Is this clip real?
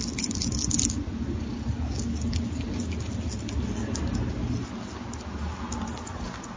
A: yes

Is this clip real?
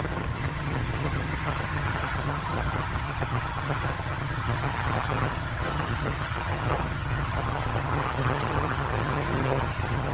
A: no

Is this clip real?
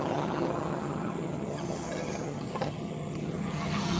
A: no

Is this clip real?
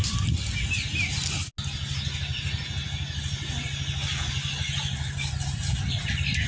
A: yes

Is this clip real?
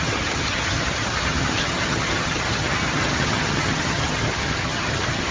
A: no